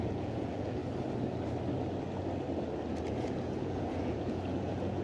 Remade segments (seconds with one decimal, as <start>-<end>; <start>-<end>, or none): 0.0-0.8; 2.9-5.0